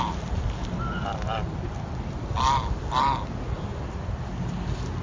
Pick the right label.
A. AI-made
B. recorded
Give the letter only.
B